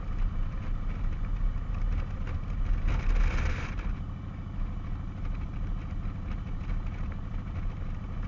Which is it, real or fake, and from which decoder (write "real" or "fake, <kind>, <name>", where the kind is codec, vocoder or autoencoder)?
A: real